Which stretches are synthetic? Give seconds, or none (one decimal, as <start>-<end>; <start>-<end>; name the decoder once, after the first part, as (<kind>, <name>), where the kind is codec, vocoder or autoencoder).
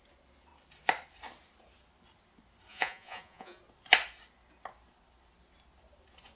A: 2.7-3.6 (vocoder, Vocos)